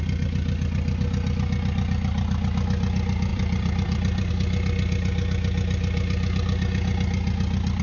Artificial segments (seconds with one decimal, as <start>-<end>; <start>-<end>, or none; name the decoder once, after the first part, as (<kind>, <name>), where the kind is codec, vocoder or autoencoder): 3.3-4.3 (vocoder, BigVGAN v2)